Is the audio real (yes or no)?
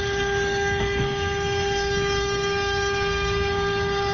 no